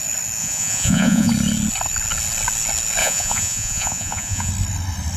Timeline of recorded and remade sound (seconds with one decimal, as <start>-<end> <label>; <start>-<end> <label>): 0.0-0.4 recorded; 0.4-1.3 remade; 1.3-3.0 recorded; 3.0-4.5 remade; 4.5-5.2 recorded